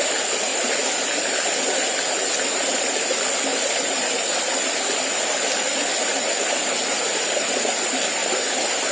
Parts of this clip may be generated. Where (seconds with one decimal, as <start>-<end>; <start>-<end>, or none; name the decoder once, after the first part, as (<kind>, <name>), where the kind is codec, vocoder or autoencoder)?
3.5-6.7 (vocoder, BigVGAN v2); 8.2-8.9